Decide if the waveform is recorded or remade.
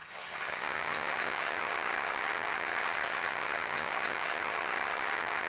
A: remade